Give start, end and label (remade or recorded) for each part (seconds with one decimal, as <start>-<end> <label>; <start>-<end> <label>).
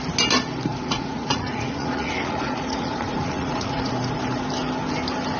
0.0-0.7 recorded; 0.7-3.9 remade; 3.9-5.4 recorded